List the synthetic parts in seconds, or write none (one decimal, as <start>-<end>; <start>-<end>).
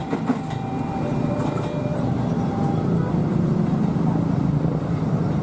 0.7-1.4; 1.9-2.5; 3.2-5.4